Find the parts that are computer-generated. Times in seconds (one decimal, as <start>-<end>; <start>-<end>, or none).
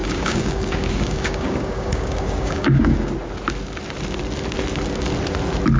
0.0-3.1